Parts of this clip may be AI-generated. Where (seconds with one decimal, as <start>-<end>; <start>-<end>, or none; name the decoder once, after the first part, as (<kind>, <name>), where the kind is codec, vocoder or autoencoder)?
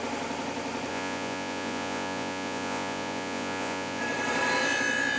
0.9-4.0 (vocoder, Vocos)